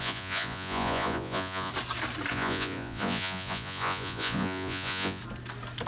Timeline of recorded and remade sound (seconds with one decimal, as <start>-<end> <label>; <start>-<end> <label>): 0.0-1.7 remade; 1.7-2.3 recorded; 2.3-5.2 remade; 5.2-5.9 recorded